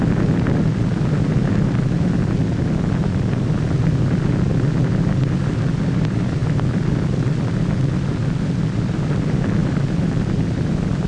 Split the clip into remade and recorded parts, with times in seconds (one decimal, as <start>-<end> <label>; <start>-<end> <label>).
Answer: 0.0-6.4 recorded; 6.4-7.5 remade; 7.5-9.6 recorded; 9.6-11.1 remade